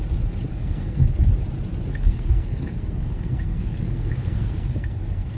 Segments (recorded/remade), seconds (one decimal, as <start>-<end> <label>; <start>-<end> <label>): 0.0-0.5 recorded; 0.5-1.3 remade; 1.3-1.9 recorded; 1.9-5.4 remade